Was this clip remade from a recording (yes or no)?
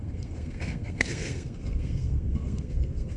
yes